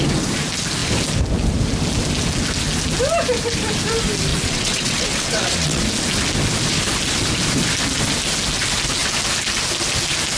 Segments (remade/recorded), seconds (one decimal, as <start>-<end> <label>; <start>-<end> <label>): 0.0-4.3 recorded; 4.3-5.8 remade; 5.8-10.4 recorded